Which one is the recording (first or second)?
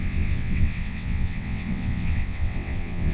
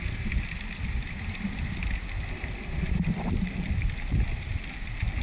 second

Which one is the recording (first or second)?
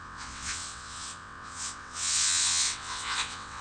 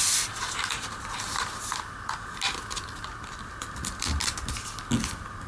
second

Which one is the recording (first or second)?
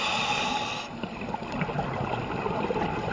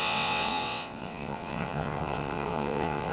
first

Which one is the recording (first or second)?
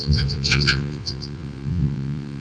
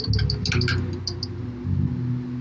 second